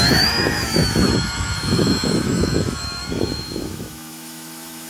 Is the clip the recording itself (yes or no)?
no